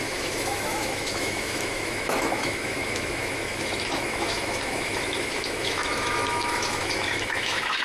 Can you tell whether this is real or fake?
fake